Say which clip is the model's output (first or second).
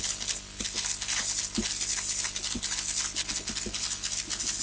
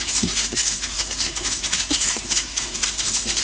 second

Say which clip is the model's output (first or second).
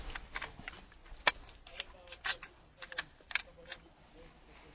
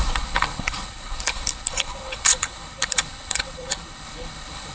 second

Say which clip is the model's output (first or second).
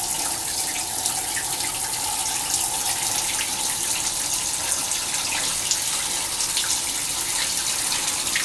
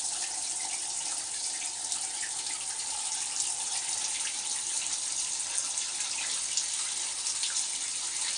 second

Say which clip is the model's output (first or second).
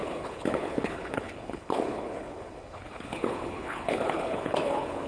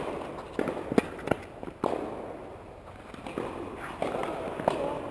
first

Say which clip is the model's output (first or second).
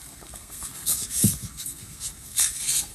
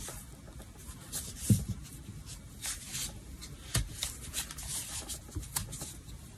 first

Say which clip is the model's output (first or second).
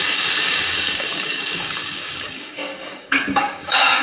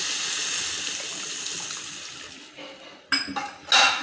first